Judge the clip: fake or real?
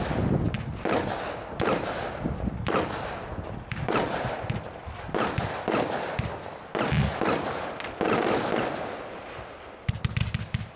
real